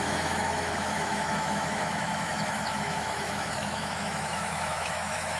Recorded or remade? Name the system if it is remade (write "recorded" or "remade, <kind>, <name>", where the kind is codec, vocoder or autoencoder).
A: remade, autoencoder, DAC-VAE